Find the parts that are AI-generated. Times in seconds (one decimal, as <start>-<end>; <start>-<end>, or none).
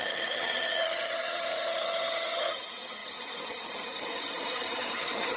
0.0-5.4